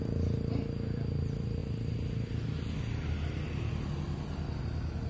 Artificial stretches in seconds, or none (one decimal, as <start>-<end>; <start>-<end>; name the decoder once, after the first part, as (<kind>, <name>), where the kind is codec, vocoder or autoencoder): none